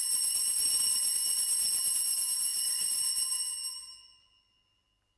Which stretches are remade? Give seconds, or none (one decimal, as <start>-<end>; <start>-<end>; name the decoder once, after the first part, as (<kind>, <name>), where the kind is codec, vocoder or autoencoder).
2.5-3.1 (vocoder, BigVGAN v2)